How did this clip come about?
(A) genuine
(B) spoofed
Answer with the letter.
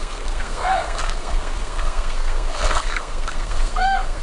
B